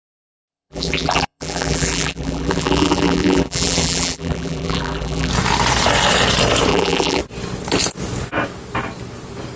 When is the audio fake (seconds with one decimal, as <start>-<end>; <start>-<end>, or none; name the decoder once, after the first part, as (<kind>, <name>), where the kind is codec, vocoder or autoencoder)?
0.5-5.3 (vocoder, BigVGAN v2); 6.7-7.2